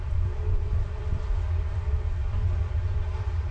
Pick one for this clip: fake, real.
fake